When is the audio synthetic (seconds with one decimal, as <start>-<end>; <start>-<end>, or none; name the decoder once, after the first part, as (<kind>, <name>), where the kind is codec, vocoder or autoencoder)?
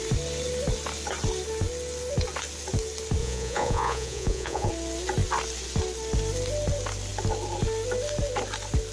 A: 3.2-4.7 (vocoder, Vocos)